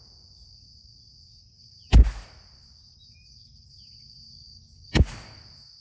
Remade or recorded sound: recorded